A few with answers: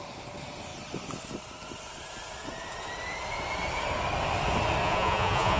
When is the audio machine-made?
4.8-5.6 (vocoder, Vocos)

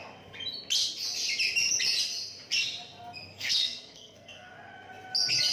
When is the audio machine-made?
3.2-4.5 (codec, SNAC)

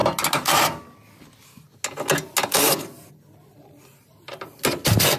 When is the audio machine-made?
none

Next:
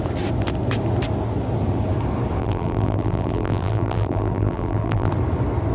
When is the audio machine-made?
2.4-5.1 (vocoder, BigVGAN v2)

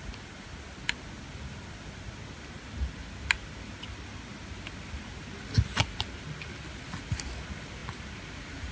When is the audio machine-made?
none

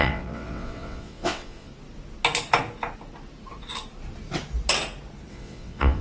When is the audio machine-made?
0.0-1.7 (vocoder, WaveNeXt); 5.3-6.0

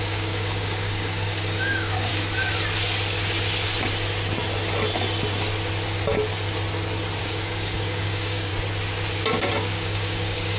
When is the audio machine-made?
0.0-2.1 (codec, DAC); 7.2-8.5; 9.3-10.6

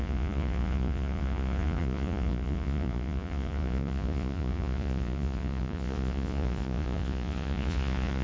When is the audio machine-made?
0.0-8.2 (vocoder, Vocos)